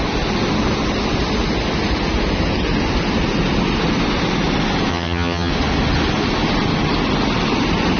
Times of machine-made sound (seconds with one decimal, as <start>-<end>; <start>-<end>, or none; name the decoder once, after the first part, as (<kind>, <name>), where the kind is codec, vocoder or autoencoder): 4.9-5.5 (vocoder, HiFi-GAN)